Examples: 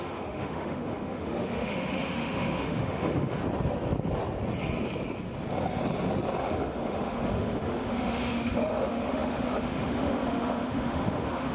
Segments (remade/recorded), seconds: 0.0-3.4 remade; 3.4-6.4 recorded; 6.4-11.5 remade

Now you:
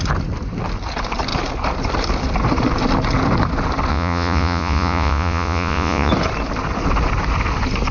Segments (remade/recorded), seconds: 0.0-3.9 recorded; 3.9-6.1 remade; 6.1-7.9 recorded

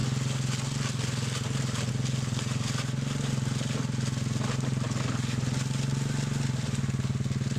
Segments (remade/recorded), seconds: 0.0-7.6 recorded

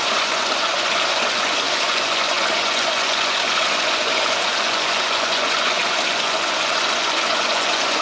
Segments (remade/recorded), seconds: 0.0-8.0 remade

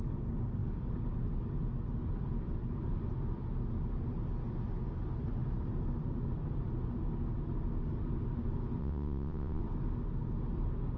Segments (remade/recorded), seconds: 0.0-8.8 recorded; 8.8-9.6 remade; 9.6-11.0 recorded

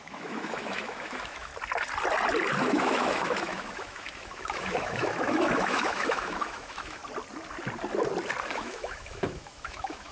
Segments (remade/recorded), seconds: 0.0-1.5 remade; 1.5-2.6 recorded; 2.6-7.0 remade; 7.0-8.4 recorded; 8.4-10.1 remade

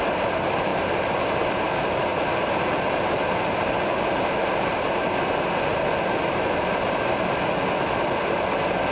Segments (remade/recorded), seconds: 0.0-8.9 recorded